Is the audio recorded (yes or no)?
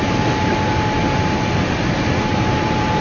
no